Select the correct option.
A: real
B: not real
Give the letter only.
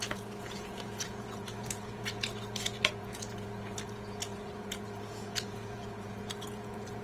B